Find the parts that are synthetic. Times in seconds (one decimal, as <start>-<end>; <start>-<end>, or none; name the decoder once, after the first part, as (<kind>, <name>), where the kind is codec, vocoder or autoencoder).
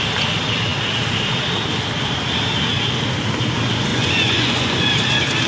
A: 3.9-4.9 (vocoder, Vocos)